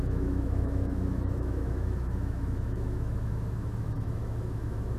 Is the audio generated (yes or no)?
yes